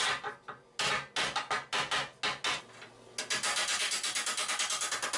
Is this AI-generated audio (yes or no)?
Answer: no